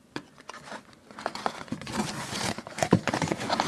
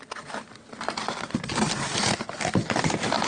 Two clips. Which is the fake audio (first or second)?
first